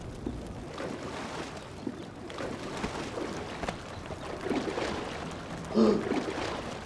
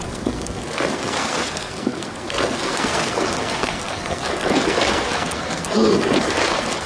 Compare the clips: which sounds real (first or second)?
first